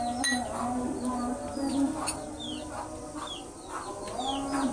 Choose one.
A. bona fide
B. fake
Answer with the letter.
A